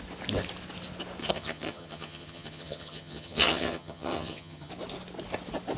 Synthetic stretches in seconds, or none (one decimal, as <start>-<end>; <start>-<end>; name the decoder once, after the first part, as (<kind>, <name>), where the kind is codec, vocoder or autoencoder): 1.2-4.7 (vocoder, HiFi-GAN)